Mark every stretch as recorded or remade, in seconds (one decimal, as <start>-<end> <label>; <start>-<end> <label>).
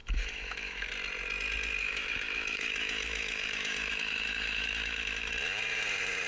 0.0-0.9 remade; 0.9-1.8 recorded; 1.8-5.3 remade; 5.3-6.3 recorded